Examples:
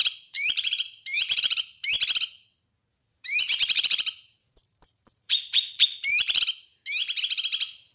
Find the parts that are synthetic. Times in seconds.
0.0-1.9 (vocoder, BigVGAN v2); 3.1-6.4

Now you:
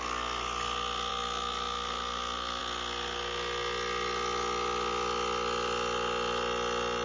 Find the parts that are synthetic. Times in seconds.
none

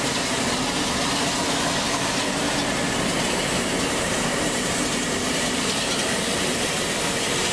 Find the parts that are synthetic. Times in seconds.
4.3-7.1 (vocoder, BigVGAN v2)

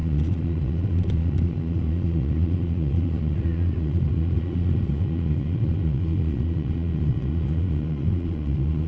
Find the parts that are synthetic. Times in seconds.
0.0-8.9 (vocoder, Vocos)

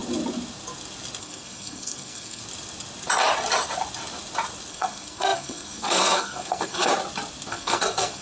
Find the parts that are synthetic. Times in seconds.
1.2-2.4 (codec, SNAC); 4.7-6.9; 7.5-8.2

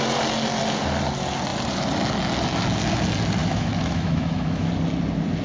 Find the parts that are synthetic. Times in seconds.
3.4-4.7 (autoencoder, DAC-VAE)

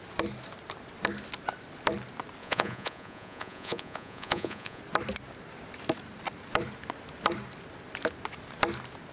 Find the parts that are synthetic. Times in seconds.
2.4-4.8 (vocoder, Vocos)

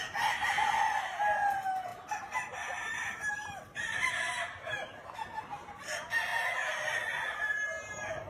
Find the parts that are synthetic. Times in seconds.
1.9-4.1 (vocoder, BigVGAN v2)